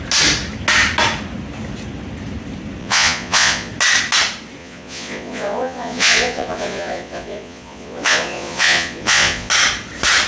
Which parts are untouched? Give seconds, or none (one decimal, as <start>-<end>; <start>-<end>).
0.0-2.8; 3.7-4.6; 9.5-10.3